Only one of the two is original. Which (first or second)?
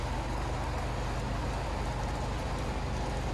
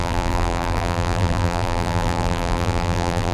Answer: first